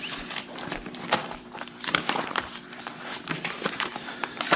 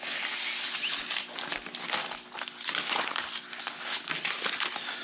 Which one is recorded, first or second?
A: second